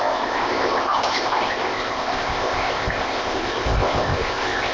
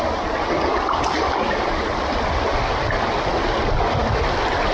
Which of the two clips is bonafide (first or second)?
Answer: second